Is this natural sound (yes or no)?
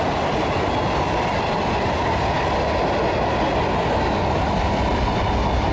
yes